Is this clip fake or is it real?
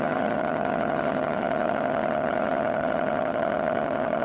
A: fake